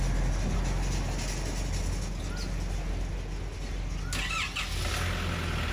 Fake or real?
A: real